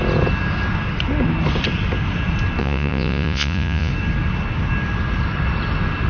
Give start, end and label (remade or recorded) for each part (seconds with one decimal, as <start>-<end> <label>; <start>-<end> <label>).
0.0-2.6 recorded; 2.6-3.9 remade; 3.9-6.1 recorded